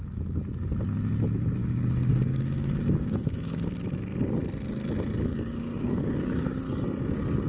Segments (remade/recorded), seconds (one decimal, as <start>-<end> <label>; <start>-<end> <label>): 0.0-1.6 recorded; 1.6-3.7 remade; 3.7-5.3 recorded; 5.3-6.6 remade; 6.6-7.5 recorded

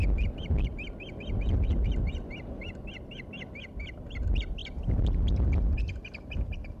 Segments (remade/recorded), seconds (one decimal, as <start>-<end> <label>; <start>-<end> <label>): 0.0-6.8 recorded

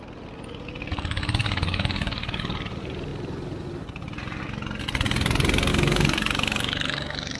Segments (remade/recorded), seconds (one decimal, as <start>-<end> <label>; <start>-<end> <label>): 0.0-0.9 recorded; 0.9-2.5 remade; 2.5-5.7 recorded; 5.7-7.4 remade

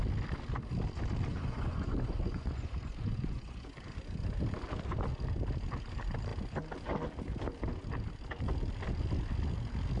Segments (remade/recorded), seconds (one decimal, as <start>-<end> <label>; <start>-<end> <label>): 0.0-1.3 recorded; 1.3-3.7 remade; 3.7-10.0 recorded

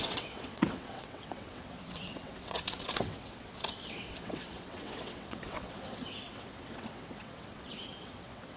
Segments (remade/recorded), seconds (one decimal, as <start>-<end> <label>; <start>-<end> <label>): 0.0-8.6 remade

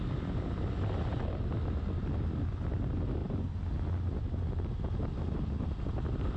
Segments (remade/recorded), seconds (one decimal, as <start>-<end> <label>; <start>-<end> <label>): 0.0-6.4 recorded

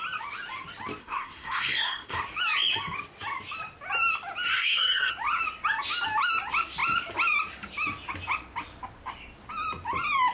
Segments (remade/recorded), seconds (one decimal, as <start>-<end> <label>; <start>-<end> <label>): 0.0-1.0 recorded; 1.0-2.2 remade; 2.2-4.5 recorded; 4.5-5.1 remade; 5.1-10.3 recorded

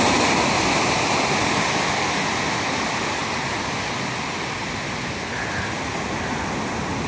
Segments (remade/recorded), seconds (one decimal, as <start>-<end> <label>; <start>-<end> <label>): 0.0-7.1 recorded